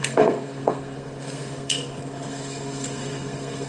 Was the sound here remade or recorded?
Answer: remade